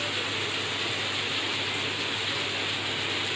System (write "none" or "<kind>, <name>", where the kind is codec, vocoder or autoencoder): none